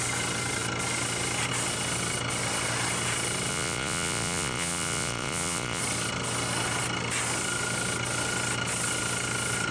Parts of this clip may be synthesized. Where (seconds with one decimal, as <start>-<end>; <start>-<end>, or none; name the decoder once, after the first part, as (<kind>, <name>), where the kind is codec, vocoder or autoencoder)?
3.5-5.8 (vocoder, Vocos)